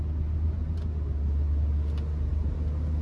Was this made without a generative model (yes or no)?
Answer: yes